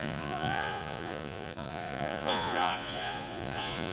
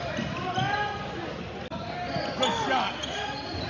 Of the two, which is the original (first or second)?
second